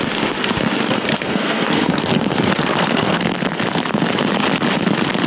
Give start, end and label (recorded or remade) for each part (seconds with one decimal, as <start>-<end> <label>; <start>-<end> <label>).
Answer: 0.0-0.8 recorded; 0.8-3.2 remade; 3.2-5.3 recorded

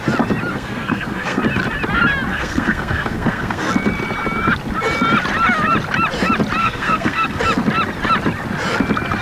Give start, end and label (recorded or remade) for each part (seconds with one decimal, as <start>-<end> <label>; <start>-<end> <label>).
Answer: 0.0-0.5 recorded; 0.5-1.4 remade; 1.4-2.3 recorded; 2.3-3.7 remade; 3.7-6.6 recorded; 6.6-7.4 remade; 7.4-9.2 recorded

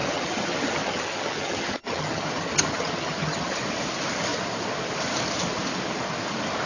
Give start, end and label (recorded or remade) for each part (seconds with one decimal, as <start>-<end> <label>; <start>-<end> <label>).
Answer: 0.0-3.6 remade; 3.6-6.7 recorded

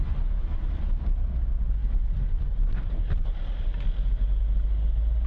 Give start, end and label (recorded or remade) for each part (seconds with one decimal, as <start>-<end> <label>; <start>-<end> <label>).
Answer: 0.0-5.3 recorded